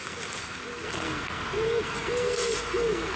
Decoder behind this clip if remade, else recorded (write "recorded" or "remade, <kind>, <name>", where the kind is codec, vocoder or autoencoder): remade, codec, SNAC